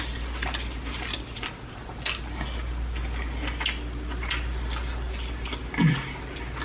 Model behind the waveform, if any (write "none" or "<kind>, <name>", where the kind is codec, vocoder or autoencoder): none